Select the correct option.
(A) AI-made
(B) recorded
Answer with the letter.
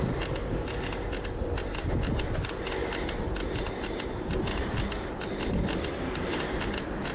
B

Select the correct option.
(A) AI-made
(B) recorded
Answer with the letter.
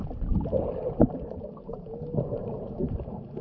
A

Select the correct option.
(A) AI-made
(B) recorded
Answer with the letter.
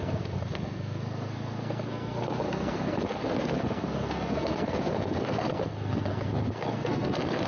A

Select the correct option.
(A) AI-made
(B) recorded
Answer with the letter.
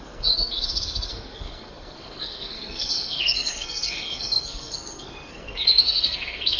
A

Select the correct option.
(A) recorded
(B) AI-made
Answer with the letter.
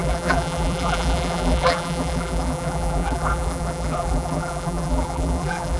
B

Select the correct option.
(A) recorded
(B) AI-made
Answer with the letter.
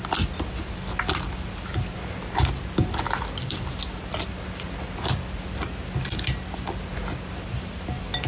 A